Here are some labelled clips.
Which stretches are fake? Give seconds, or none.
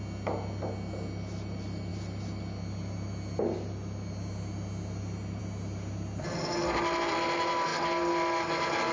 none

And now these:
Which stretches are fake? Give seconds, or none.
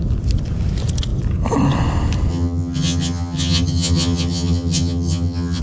2.3-5.6 (vocoder, HiFi-GAN)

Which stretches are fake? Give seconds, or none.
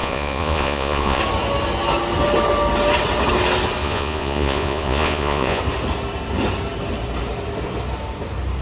0.0-1.2 (vocoder, Vocos); 3.8-5.6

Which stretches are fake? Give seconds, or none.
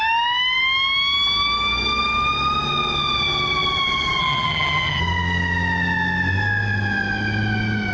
4.2-5.0 (vocoder, HiFi-GAN)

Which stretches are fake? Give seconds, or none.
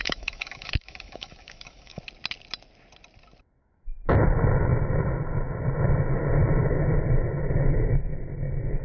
0.0-2.0 (autoencoder, DAC-VAE)